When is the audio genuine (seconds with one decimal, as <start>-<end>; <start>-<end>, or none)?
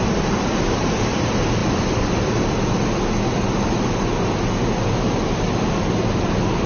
0.0-6.7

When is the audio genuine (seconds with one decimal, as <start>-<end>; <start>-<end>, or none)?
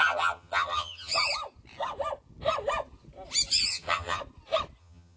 1.1-3.7; 4.2-4.8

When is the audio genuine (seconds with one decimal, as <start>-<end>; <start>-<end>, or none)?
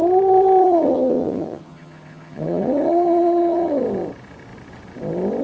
0.0-0.6; 3.8-5.4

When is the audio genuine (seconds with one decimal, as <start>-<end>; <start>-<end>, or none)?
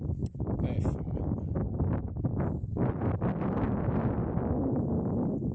0.0-5.5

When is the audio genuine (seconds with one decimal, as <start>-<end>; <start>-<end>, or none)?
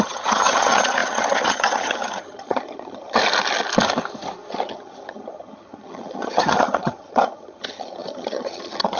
3.2-4.5